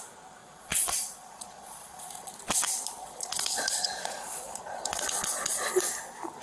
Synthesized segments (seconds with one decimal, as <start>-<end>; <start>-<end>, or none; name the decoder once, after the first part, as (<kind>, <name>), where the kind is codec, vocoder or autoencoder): 0.4-2.3 (vocoder, Vocos); 3.0-5.7